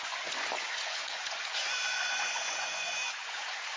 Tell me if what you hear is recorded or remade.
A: remade